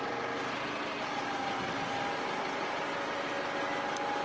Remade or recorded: recorded